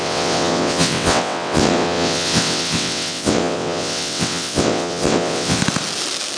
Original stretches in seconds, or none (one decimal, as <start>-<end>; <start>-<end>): 5.6-6.4